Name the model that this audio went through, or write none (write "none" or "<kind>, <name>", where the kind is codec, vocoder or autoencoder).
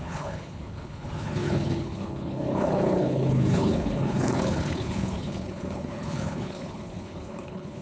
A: codec, HILCodec